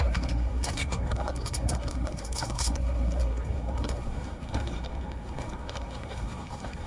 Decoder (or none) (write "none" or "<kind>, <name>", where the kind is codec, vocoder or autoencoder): codec, SNAC